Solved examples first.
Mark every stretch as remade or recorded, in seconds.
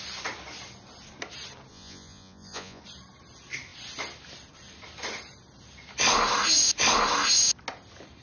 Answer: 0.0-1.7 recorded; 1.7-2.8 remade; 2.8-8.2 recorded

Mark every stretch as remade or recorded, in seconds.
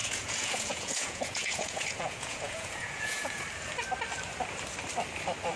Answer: 0.0-3.4 remade; 3.4-5.6 recorded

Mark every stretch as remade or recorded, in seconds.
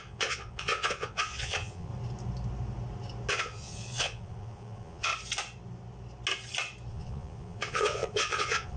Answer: 0.0-1.9 remade; 1.9-3.3 recorded; 3.3-5.1 remade; 5.1-6.9 recorded; 6.9-8.8 remade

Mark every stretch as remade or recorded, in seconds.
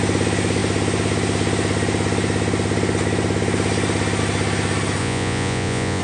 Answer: 0.0-5.0 recorded; 5.0-6.0 remade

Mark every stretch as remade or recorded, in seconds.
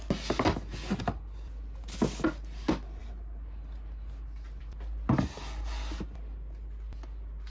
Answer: 0.0-7.5 recorded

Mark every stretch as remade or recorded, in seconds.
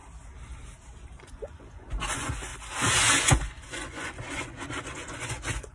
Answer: 0.0-1.2 recorded; 1.2-2.5 remade; 2.5-3.2 recorded; 3.2-5.7 remade